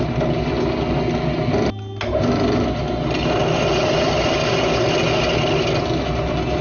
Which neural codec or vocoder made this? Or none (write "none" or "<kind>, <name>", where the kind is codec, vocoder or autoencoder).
none